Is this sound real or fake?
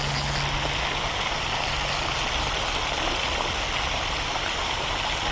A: real